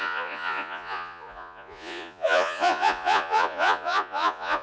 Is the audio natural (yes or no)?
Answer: no